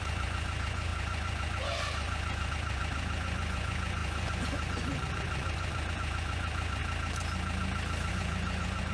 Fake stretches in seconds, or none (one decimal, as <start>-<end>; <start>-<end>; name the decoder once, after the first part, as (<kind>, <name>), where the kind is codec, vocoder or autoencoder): 0.0-6.8 (vocoder, Vocos); 8.1-8.9